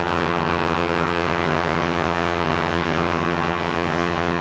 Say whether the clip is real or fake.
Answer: fake